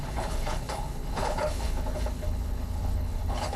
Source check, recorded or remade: remade